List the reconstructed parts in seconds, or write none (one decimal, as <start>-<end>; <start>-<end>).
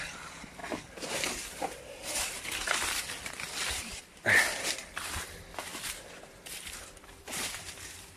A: 0.0-8.2